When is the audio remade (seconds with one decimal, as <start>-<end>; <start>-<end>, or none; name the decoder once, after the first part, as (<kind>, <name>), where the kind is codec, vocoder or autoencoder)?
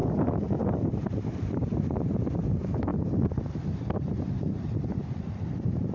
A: 0.0-2.3 (vocoder, BigVGAN v2); 2.9-5.9